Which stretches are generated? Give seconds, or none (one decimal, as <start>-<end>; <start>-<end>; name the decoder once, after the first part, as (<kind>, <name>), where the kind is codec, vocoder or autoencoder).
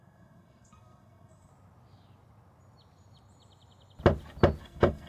0.0-1.5 (codec, SNAC); 4.6-5.1